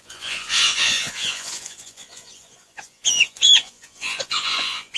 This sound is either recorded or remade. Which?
remade